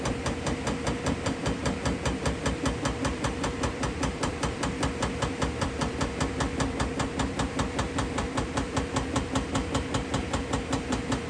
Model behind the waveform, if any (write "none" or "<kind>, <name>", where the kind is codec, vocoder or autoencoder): vocoder, BigVGAN v2